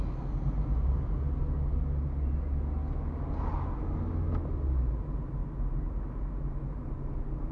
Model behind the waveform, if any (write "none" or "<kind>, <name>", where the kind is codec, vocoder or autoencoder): none